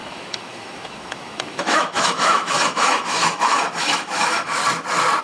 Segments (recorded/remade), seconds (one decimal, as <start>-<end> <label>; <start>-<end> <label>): 0.0-4.6 remade; 4.6-5.2 recorded